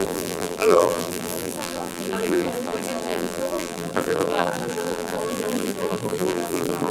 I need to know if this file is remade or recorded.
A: remade